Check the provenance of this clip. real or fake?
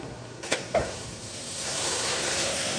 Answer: fake